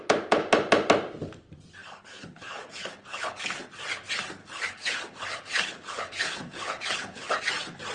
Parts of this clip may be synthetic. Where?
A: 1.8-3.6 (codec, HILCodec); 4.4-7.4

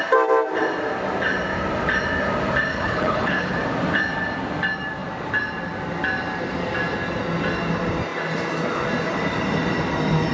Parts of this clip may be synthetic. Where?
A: 2.7-3.6 (codec, HILCodec)

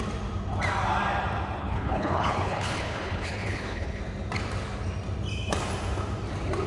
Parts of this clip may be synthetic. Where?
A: 1.6-4.0 (codec, HILCodec)

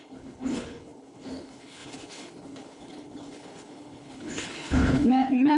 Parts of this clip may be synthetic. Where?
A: 0.0-5.6 (codec, HILCodec)

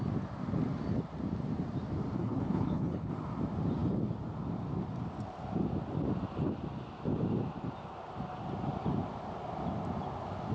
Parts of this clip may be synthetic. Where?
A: 2.2-3.1 (codec, HILCodec)